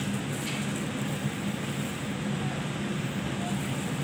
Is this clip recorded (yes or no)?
yes